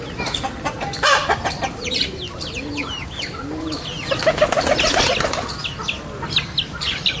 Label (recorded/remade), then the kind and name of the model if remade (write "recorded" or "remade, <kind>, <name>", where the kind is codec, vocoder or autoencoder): recorded